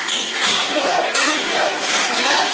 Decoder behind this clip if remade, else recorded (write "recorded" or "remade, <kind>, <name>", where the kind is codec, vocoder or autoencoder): remade, codec, SNAC